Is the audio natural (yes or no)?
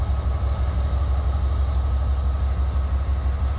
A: yes